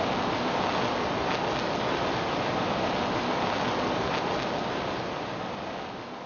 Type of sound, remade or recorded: recorded